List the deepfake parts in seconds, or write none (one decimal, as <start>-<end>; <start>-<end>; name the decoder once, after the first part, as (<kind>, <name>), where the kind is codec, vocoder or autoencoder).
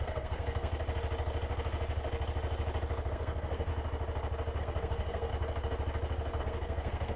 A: 0.0-0.7 (codec, SNAC); 3.1-3.7; 4.6-5.3; 6.4-7.2